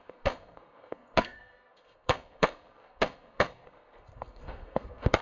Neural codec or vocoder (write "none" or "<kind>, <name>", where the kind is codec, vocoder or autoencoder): codec, SNAC